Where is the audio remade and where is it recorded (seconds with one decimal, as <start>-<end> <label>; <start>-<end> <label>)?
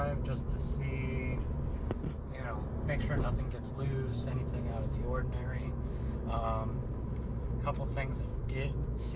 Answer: 0.0-4.1 recorded; 4.1-6.8 remade; 6.8-8.3 recorded; 8.3-9.2 remade